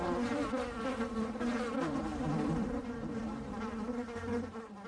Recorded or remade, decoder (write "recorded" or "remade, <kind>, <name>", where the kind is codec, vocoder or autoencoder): recorded